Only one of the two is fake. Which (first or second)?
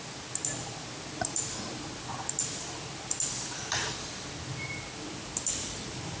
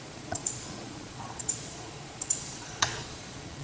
second